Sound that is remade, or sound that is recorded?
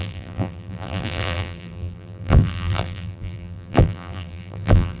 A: remade